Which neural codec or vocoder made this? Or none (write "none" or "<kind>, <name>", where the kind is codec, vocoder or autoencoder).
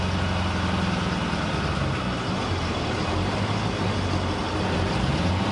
none